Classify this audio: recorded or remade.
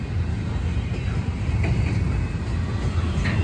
recorded